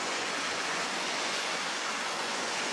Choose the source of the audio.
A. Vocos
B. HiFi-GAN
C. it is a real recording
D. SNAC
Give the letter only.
A